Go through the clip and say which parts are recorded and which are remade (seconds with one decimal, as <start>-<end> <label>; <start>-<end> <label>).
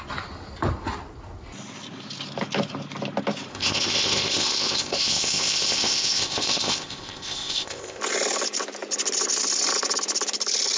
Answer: 0.0-3.5 recorded; 3.5-8.0 remade; 8.0-10.8 recorded